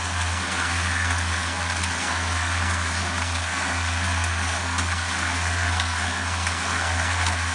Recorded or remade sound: remade